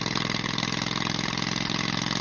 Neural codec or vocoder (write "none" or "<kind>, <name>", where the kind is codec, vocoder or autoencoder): none